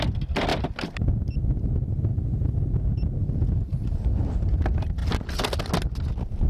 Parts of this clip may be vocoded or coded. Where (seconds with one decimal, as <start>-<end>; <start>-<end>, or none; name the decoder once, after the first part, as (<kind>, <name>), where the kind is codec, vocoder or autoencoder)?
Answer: 3.7-4.3 (vocoder, BigVGAN v2)

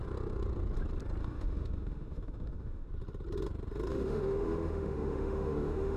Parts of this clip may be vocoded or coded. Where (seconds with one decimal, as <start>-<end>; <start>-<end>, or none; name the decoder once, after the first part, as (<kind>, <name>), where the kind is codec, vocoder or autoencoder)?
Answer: 1.2-2.9 (autoencoder, DAC-VAE); 3.9-6.0